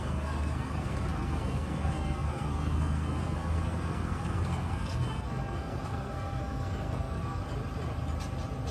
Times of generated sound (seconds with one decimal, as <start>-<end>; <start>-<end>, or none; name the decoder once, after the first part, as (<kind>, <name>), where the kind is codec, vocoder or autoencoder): 0.0-7.4 (codec, SNAC)